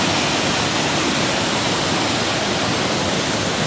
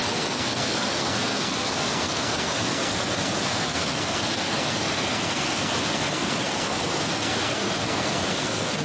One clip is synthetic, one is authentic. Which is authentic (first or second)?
first